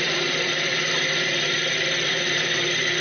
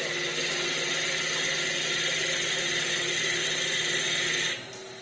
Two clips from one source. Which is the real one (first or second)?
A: second